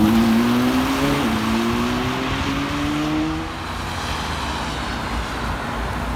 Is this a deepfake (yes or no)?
no